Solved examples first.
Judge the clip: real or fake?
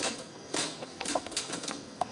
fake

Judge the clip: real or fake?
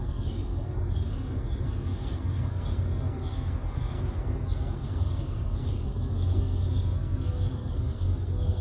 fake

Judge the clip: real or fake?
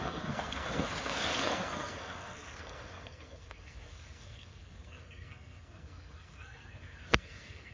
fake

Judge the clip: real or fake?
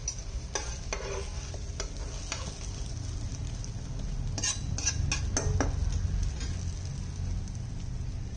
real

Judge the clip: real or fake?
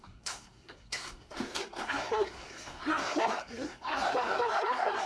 fake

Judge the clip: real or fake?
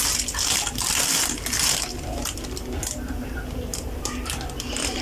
real